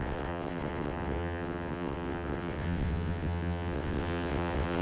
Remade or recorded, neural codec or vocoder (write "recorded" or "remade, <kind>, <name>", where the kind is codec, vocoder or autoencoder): remade, vocoder, WaveNeXt